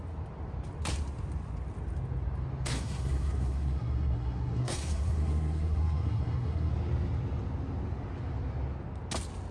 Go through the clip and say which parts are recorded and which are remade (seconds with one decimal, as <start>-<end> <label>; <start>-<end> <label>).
0.0-2.7 recorded; 2.7-6.7 remade; 6.7-9.5 recorded